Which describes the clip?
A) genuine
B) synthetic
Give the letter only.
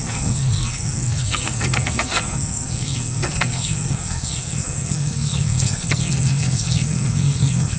B